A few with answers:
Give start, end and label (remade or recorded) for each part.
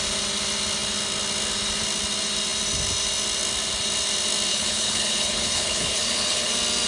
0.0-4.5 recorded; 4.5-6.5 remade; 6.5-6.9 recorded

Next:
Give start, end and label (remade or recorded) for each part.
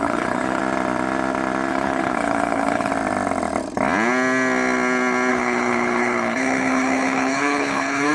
0.0-0.6 remade; 0.6-1.7 recorded; 1.7-2.9 remade; 2.9-5.3 recorded; 5.3-8.1 remade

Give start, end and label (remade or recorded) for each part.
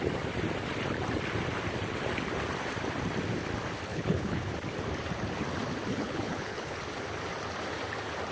0.0-3.9 recorded; 3.9-4.5 remade; 4.5-5.9 recorded; 5.9-6.8 remade; 6.8-8.3 recorded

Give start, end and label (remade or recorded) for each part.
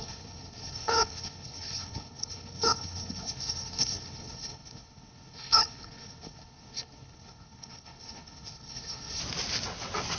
0.0-9.2 remade; 9.2-10.2 recorded